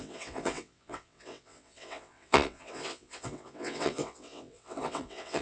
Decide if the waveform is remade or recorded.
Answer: remade